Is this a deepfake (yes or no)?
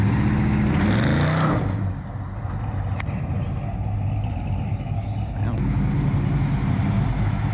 no